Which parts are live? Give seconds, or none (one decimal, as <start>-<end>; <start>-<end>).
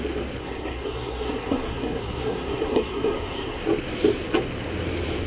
0.0-0.4; 3.6-5.3